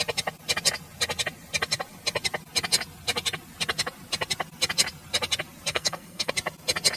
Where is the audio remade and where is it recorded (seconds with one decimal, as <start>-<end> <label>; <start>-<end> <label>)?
0.0-5.7 recorded; 5.7-6.3 remade; 6.3-7.0 recorded